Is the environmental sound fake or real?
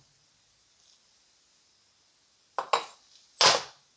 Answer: real